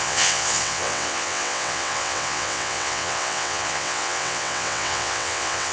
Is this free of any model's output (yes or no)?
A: no